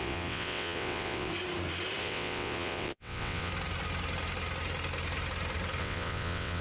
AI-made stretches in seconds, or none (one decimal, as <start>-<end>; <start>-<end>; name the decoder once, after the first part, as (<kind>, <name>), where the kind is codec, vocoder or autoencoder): 0.0-1.3 (vocoder, WaveNeXt); 2.0-3.5; 5.8-6.6